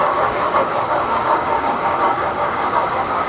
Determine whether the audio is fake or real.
fake